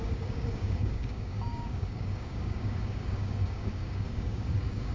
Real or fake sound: fake